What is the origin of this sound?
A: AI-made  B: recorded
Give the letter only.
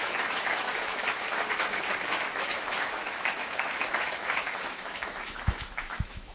A